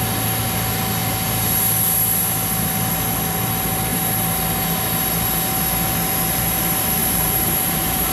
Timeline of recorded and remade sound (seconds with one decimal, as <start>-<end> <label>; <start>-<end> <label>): 0.0-7.0 recorded; 7.0-8.1 remade